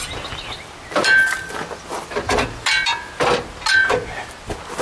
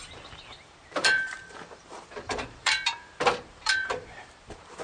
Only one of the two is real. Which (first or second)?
first